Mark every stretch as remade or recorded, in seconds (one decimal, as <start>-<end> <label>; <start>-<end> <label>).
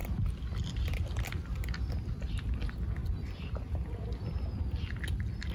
0.0-5.5 recorded